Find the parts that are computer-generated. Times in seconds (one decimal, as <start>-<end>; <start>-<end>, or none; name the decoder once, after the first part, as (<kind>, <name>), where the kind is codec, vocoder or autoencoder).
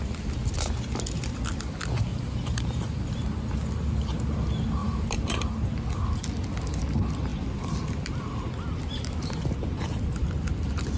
2.1-2.8 (vocoder, BigVGAN v2); 4.8-5.7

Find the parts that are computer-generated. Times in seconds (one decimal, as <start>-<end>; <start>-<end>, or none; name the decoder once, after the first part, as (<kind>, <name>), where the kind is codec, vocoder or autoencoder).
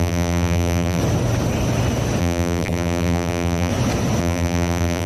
0.0-1.0 (vocoder, BigVGAN v2); 2.2-3.7; 4.2-5.1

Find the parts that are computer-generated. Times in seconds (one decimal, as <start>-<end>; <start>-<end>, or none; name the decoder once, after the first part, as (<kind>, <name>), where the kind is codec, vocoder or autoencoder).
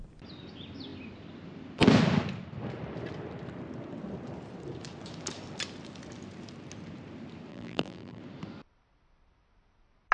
7.5-8.2 (vocoder, BigVGAN v2)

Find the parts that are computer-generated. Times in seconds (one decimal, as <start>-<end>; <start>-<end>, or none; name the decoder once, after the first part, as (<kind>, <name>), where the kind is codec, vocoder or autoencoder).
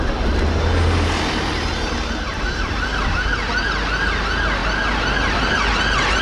2.3-3.5 (vocoder, BigVGAN v2)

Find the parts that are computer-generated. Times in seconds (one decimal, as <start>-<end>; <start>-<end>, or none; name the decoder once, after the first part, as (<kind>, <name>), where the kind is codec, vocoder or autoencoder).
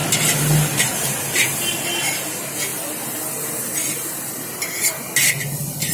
none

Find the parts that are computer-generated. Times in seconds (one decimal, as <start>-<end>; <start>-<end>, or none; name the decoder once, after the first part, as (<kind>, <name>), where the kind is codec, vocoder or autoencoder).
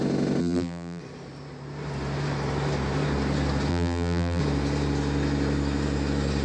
0.4-1.0 (vocoder, BigVGAN v2); 3.7-4.4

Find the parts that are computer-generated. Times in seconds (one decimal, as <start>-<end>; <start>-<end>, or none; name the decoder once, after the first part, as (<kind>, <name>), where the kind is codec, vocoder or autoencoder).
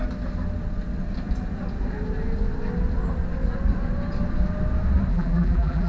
5.1-5.9 (vocoder, BigVGAN v2)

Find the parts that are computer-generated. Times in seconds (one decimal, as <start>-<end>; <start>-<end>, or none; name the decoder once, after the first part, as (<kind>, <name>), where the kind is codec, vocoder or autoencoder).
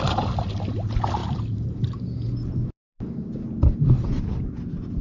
1.2-4.2 (vocoder, BigVGAN v2)